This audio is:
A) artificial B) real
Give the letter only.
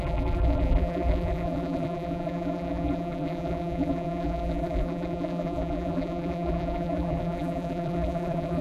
A